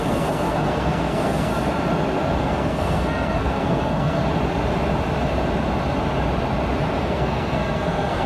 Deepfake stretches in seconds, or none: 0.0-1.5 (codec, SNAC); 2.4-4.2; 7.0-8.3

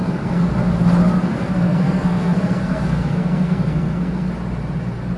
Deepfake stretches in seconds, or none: 0.0-0.5 (codec, SNAC); 1.2-4.3